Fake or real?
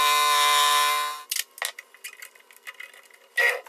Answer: real